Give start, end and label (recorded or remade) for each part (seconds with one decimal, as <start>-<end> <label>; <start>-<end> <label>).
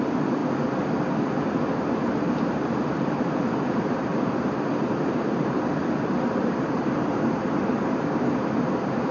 0.0-0.4 remade; 0.4-2.2 recorded; 2.2-4.1 remade; 4.1-4.8 recorded; 4.8-5.8 remade; 5.8-6.4 recorded; 6.4-9.1 remade